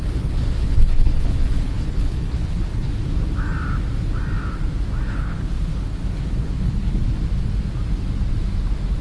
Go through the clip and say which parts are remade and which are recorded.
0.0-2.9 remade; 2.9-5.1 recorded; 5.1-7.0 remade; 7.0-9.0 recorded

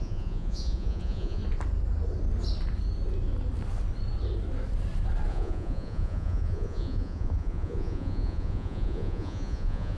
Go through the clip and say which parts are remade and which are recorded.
0.0-1.4 remade; 1.4-5.3 recorded; 5.3-10.0 remade

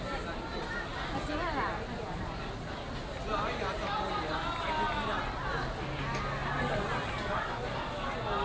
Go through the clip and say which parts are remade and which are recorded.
0.0-8.4 recorded

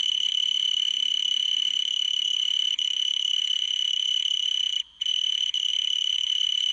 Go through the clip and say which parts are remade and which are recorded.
0.0-6.7 remade

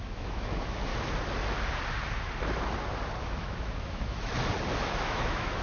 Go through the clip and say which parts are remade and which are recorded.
0.0-0.9 remade; 0.9-3.2 recorded; 3.2-4.3 remade; 4.3-4.8 recorded; 4.8-5.6 remade